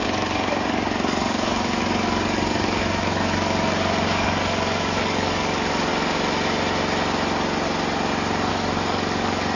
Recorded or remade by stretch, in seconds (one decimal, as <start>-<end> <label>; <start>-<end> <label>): 0.0-5.9 remade; 5.9-8.5 recorded; 8.5-9.6 remade